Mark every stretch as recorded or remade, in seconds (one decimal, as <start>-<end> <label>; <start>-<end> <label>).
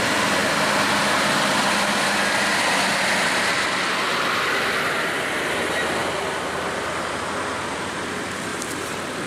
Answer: 0.0-8.5 recorded; 8.5-9.3 remade